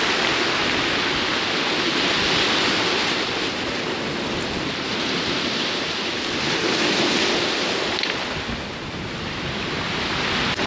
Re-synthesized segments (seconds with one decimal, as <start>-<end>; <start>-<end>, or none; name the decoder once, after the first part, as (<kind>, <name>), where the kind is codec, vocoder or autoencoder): none